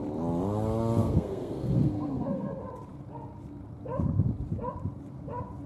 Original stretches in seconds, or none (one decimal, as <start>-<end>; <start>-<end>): 0.0-1.0; 2.5-5.7